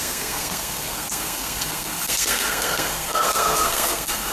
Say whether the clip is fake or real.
fake